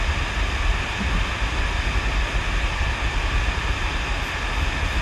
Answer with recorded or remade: recorded